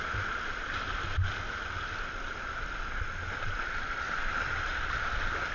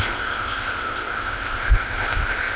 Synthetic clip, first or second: second